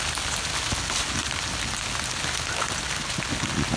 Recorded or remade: recorded